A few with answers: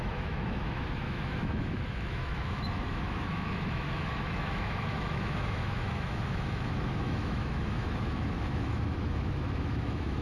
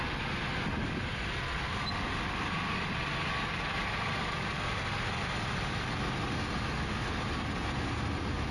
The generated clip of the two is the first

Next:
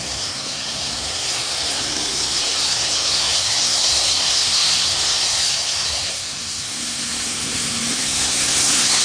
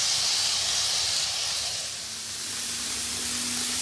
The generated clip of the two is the first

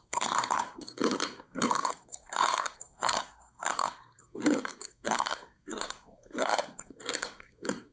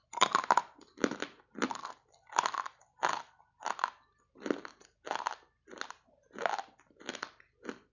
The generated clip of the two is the first